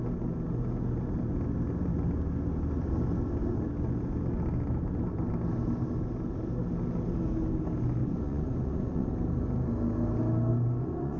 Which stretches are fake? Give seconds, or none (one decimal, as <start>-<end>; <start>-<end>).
8.0-9.1; 10.5-11.2